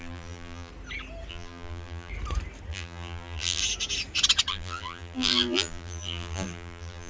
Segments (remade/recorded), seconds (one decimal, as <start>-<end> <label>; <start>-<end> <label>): 0.0-0.7 remade; 0.7-1.3 recorded; 1.3-2.1 remade; 2.1-2.7 recorded; 2.7-3.6 remade; 3.6-4.5 recorded; 4.5-7.1 remade